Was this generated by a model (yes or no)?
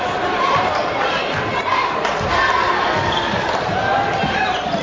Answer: yes